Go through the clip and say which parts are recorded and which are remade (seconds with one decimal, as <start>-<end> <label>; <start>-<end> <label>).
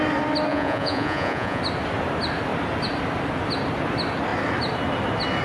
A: 0.0-0.5 recorded; 0.5-1.6 remade; 1.6-5.4 recorded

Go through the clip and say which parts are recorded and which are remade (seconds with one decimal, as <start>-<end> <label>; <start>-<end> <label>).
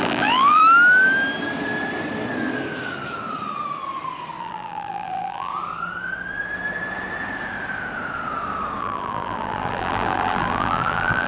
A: 0.0-0.6 remade; 0.6-4.4 recorded; 4.4-5.5 remade; 5.5-8.8 recorded; 8.8-11.3 remade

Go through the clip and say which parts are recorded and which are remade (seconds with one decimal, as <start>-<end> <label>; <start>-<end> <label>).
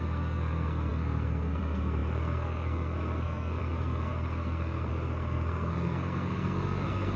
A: 0.0-7.2 remade